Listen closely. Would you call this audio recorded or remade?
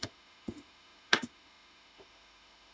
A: remade